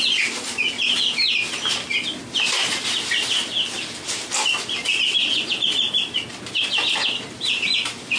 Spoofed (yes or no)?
no